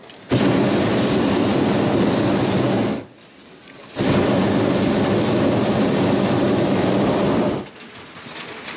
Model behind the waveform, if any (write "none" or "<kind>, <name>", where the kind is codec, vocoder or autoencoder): none